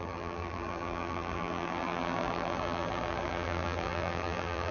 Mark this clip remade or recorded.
remade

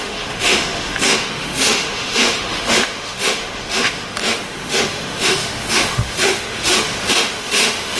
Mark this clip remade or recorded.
remade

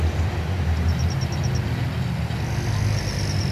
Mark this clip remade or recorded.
recorded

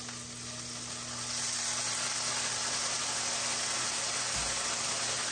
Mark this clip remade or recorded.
recorded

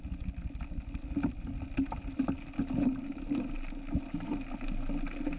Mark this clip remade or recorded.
recorded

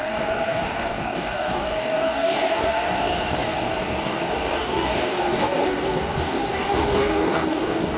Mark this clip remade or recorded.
remade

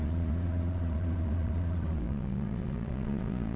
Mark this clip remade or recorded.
remade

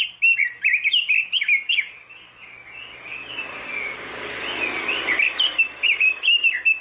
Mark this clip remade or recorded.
recorded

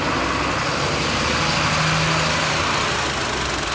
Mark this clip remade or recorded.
recorded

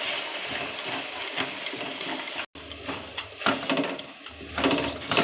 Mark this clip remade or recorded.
recorded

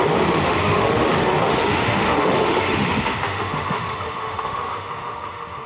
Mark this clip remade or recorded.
remade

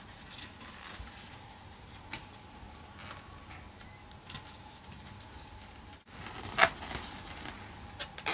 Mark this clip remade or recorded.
recorded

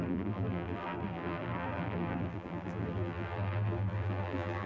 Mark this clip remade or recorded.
remade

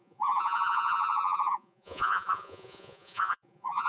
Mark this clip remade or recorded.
remade